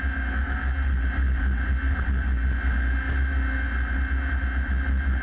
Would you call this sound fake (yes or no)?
no